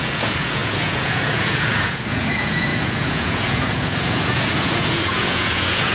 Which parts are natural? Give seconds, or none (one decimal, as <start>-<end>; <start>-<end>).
none

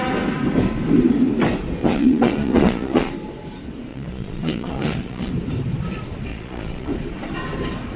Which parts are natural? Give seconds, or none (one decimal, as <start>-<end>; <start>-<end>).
0.0-1.8; 3.1-3.9; 5.3-6.3; 6.9-8.0